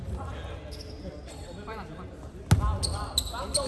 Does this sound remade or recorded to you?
recorded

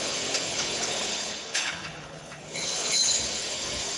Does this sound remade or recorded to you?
remade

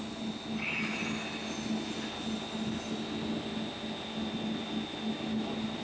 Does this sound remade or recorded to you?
recorded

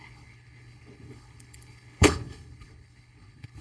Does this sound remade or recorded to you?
remade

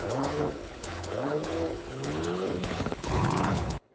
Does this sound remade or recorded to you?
remade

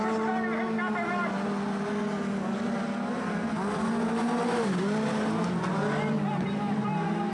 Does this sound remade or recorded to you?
recorded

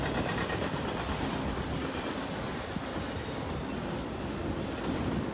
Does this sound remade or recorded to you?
recorded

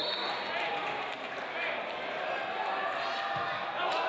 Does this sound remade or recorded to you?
recorded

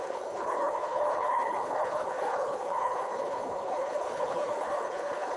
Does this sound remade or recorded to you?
remade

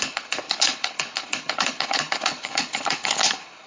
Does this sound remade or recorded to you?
remade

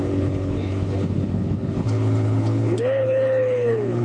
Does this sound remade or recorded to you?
remade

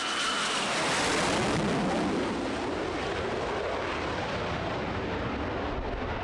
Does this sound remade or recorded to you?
recorded